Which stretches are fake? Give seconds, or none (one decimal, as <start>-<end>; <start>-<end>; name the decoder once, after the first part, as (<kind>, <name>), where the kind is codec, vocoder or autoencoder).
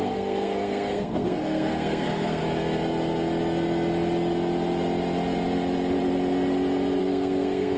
0.0-2.4 (codec, SNAC); 7.0-7.8